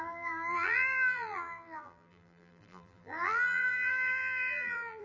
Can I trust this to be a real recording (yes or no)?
no